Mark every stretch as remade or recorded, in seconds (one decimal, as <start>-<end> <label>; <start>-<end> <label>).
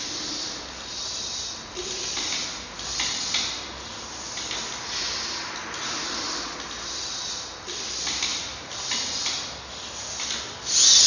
0.0-11.1 recorded